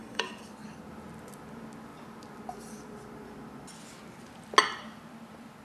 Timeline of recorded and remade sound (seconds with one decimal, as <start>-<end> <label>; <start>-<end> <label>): 0.0-0.5 remade; 0.5-5.6 recorded